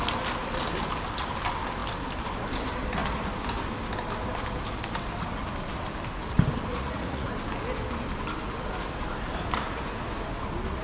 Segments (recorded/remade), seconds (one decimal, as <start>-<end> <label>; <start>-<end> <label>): 0.0-6.7 recorded; 6.7-7.3 remade; 7.3-10.8 recorded